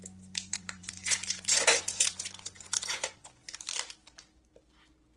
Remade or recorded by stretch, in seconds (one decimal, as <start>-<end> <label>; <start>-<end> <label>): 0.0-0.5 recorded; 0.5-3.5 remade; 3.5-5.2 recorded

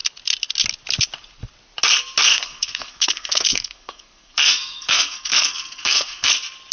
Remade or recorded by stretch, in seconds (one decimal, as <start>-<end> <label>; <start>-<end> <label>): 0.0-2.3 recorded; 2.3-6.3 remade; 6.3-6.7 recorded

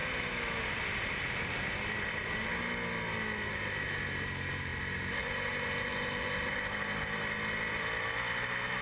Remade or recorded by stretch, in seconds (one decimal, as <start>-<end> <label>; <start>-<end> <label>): 0.0-0.6 remade; 0.6-8.8 recorded

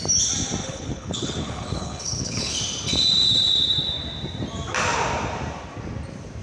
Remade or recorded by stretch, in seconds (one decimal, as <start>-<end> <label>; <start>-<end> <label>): 0.0-0.6 recorded; 0.6-2.5 remade; 2.5-6.4 recorded